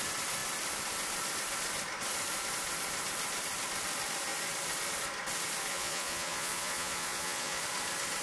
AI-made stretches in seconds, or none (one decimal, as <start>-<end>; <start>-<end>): 5.7-7.6

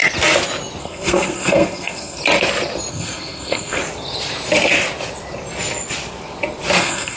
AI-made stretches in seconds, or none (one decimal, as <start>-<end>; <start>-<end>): 0.8-2.2; 2.9-3.8; 6.8-7.2

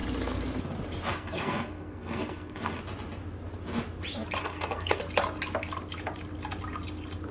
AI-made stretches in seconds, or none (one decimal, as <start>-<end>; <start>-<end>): 1.1-2.8; 4.4-5.0

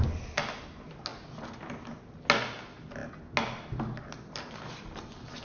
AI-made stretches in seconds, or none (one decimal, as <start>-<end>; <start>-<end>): none

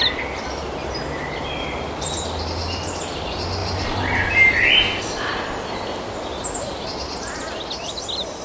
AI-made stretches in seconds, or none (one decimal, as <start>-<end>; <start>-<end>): 3.6-4.7

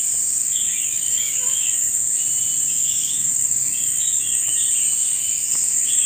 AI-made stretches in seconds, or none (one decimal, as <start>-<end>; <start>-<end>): 0.4-2.2; 2.8-4.5; 5.0-6.1